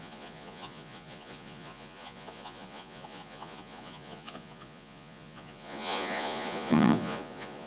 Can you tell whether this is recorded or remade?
remade